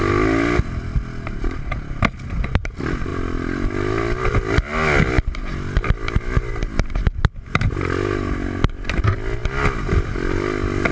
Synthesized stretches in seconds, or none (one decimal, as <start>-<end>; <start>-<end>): none